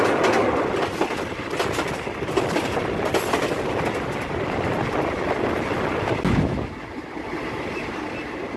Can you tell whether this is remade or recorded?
recorded